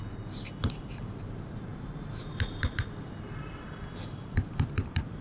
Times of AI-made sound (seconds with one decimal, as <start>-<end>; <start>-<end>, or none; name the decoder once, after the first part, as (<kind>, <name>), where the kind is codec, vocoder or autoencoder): 1.1-5.2 (vocoder, BigVGAN v2)